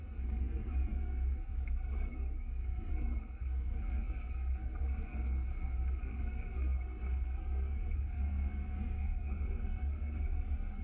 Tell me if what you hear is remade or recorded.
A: remade